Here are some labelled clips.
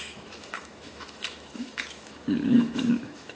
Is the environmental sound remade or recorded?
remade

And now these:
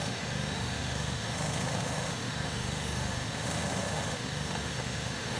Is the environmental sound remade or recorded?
remade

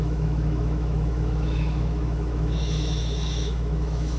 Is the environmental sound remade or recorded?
remade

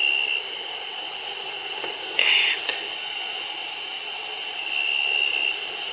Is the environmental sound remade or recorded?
recorded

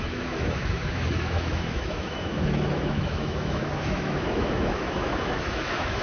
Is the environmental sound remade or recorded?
remade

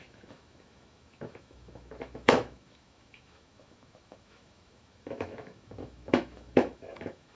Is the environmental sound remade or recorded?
remade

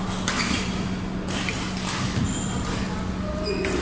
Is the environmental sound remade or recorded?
recorded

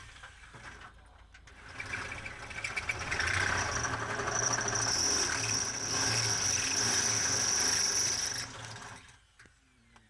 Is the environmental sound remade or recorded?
recorded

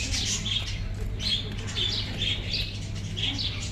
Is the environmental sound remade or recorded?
recorded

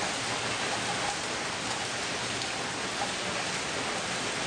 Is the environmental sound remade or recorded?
recorded